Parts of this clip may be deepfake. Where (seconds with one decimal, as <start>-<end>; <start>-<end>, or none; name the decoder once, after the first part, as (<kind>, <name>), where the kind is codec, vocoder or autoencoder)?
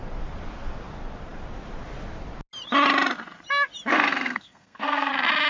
3.9-5.1 (codec, SNAC)